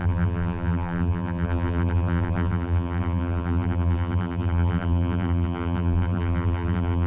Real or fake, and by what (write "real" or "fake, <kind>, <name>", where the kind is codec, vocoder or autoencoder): fake, vocoder, BigVGAN v2